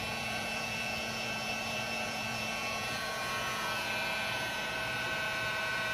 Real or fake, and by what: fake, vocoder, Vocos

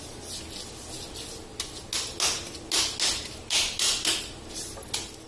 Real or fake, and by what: real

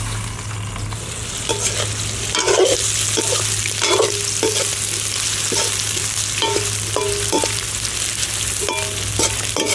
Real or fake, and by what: real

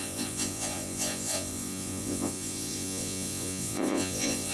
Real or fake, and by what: fake, vocoder, Vocos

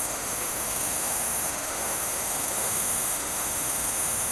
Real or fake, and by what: fake, autoencoder, DAC-VAE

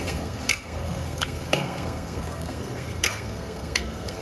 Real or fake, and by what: fake, codec, SNAC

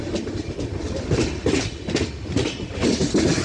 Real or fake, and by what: real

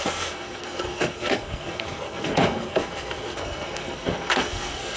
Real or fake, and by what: fake, codec, SNAC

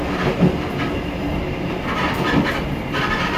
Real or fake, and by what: real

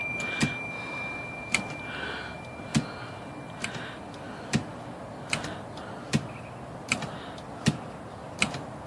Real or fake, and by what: real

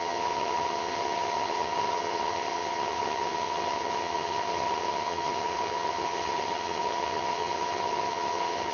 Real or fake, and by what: fake, vocoder, HiFi-GAN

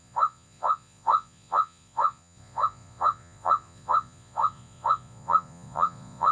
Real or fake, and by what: fake, vocoder, Vocos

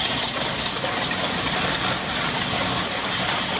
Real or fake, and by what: real